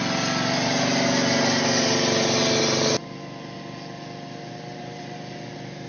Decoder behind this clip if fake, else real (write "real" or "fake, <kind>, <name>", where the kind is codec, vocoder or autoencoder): real